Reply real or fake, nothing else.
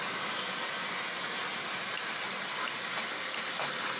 real